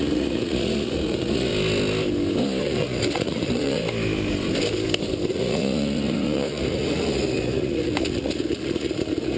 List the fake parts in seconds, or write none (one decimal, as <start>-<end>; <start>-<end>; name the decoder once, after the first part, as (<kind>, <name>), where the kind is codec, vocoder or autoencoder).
0.0-1.5 (vocoder, Vocos); 2.6-3.8; 5.3-9.4

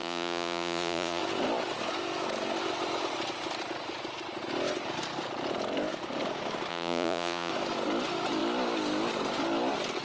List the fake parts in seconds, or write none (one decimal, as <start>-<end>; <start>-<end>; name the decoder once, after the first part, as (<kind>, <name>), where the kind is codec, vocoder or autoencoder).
0.0-1.2 (vocoder, Vocos); 6.7-7.5